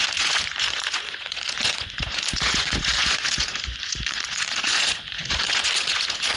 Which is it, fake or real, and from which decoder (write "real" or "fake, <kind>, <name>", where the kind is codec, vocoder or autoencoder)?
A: fake, vocoder, Vocos